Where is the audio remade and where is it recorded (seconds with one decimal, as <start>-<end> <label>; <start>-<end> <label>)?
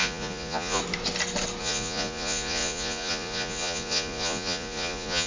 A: 0.0-0.8 remade; 0.8-1.6 recorded; 1.6-5.3 remade